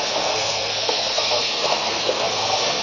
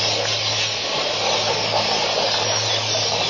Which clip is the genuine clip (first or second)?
second